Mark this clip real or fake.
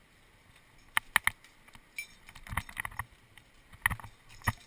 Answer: real